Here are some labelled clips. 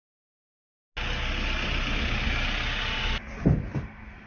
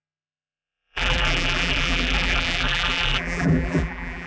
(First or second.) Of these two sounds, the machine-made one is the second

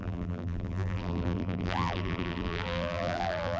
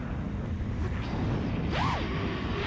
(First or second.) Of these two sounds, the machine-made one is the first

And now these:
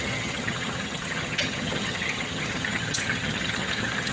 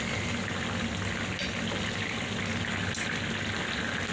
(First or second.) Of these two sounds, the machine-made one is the first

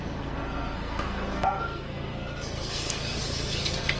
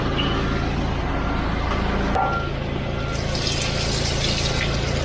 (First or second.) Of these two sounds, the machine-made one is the first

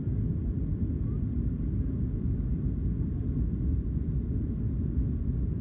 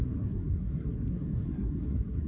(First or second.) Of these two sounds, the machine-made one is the second